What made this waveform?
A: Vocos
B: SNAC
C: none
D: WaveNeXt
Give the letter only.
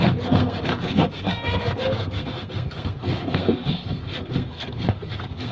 B